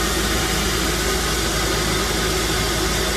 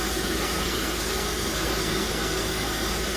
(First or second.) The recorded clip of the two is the first